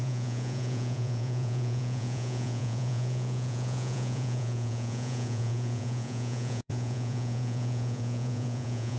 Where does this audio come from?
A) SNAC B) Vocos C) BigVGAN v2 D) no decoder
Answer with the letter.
B